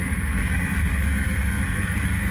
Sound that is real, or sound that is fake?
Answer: fake